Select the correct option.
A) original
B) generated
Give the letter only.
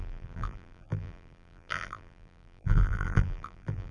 B